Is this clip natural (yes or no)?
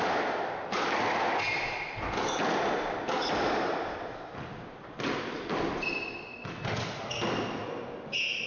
yes